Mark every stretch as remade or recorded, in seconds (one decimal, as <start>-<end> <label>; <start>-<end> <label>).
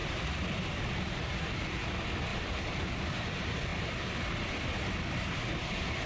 0.0-1.5 remade; 1.5-2.3 recorded; 2.3-3.2 remade; 3.2-6.1 recorded